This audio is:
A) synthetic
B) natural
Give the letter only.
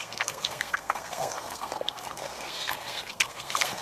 A